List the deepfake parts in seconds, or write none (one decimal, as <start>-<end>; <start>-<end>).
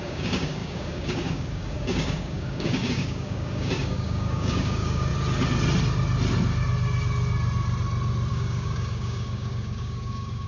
0.0-5.1; 8.3-10.5